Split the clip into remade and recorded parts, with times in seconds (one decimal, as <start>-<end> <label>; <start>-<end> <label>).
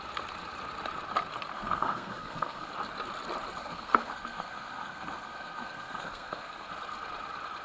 0.0-1.5 recorded; 1.5-2.7 remade; 2.7-3.6 recorded; 3.6-6.7 remade; 6.7-7.6 recorded